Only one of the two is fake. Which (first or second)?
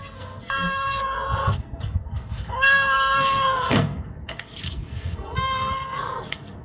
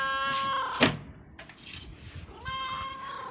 first